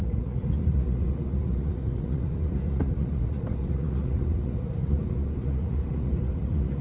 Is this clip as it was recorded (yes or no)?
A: no